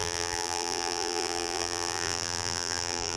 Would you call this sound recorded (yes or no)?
no